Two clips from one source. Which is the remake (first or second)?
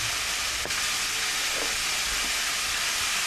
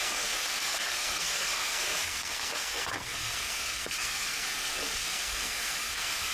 second